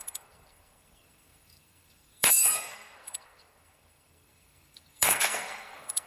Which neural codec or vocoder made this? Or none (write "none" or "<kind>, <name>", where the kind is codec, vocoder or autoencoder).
codec, SNAC